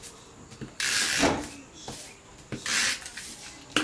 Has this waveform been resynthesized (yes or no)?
no